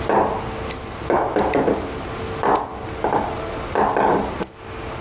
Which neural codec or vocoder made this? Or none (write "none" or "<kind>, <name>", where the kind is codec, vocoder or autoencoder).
none